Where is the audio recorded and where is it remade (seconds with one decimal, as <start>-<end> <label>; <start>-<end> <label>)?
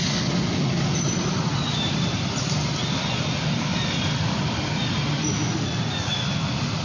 0.0-6.8 recorded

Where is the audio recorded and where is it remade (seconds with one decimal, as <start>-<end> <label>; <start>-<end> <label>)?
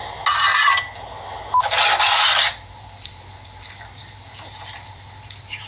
0.0-2.0 recorded; 2.0-5.7 remade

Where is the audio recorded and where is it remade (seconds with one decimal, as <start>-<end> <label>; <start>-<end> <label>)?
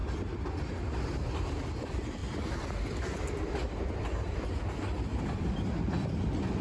0.0-6.6 recorded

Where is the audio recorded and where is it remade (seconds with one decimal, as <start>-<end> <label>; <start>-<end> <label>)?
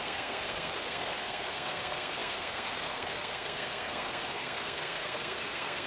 0.0-5.9 remade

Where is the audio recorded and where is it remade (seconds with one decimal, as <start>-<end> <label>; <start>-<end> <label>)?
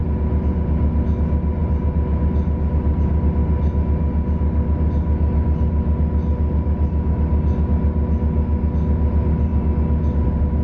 0.0-10.6 recorded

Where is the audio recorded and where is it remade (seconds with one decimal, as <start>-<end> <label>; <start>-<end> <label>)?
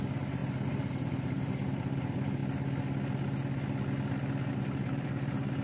0.0-2.4 remade; 2.4-4.5 recorded; 4.5-5.6 remade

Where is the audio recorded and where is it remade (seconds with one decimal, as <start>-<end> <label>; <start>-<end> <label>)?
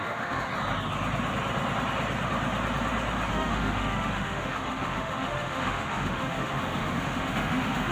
0.0-0.5 remade; 0.5-3.3 recorded; 3.3-7.9 remade